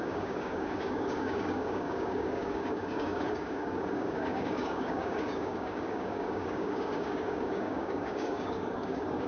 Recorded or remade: remade